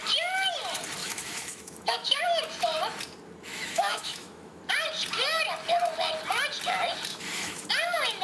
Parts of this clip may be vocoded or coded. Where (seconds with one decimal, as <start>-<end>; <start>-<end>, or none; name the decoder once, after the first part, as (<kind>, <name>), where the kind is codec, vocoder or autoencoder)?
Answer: 1.0-2.2 (autoencoder, DAC-VAE); 3.5-4.6; 7.1-7.7